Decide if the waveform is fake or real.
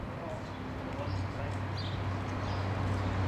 real